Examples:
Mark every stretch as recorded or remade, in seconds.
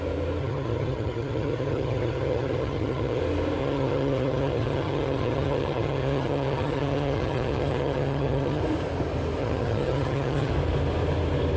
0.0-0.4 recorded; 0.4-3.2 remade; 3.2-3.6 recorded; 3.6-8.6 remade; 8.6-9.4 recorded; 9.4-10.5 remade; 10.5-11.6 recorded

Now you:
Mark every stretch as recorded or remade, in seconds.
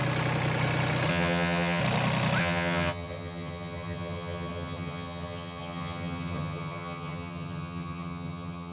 0.0-1.1 recorded; 1.1-1.8 remade; 1.8-2.4 recorded; 2.4-8.7 remade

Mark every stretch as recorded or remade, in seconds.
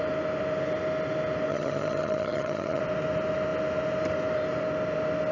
0.0-1.5 recorded; 1.5-2.8 remade; 2.8-5.3 recorded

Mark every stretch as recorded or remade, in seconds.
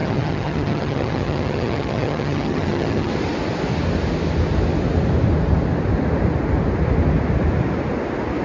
0.0-3.1 remade; 3.1-8.4 recorded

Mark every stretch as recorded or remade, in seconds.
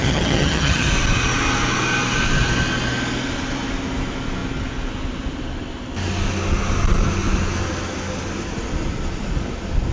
0.0-0.9 remade; 0.9-9.9 recorded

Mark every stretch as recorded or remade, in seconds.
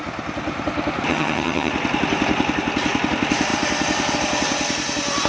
0.0-1.1 recorded; 1.1-1.7 remade; 1.7-5.3 recorded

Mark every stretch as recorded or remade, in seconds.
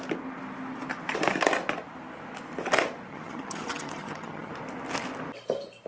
0.0-3.1 recorded; 3.1-4.5 remade; 4.5-5.9 recorded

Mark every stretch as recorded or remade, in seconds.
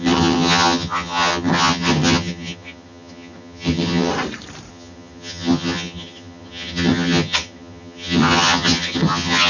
0.0-4.1 remade; 4.1-4.7 recorded; 4.7-9.5 remade